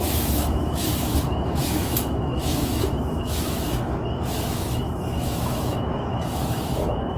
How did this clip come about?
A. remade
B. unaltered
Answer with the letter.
A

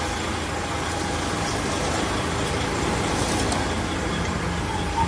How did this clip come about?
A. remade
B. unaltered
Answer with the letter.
B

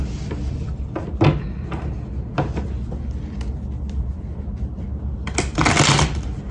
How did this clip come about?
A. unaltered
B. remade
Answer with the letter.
A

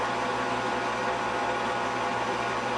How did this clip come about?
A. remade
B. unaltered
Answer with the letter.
B